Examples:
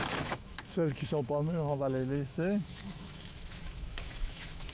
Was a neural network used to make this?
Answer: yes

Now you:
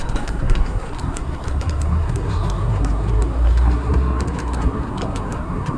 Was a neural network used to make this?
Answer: yes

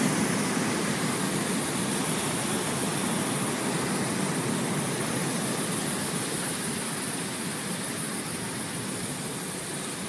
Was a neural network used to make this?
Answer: no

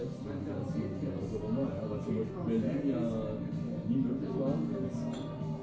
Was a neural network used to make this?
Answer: no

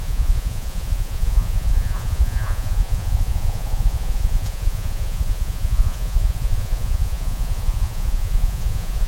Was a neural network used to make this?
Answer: yes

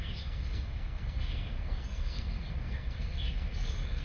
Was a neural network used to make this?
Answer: yes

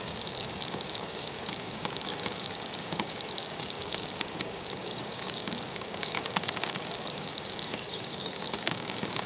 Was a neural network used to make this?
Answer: yes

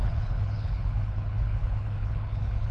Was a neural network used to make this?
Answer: yes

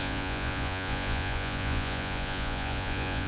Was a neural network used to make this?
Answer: yes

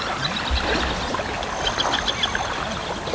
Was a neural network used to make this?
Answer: no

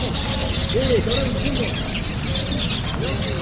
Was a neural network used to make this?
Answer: no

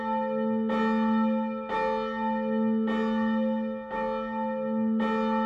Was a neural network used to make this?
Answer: no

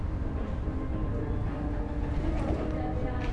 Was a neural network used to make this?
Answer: no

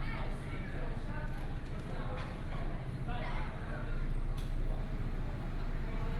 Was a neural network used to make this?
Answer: no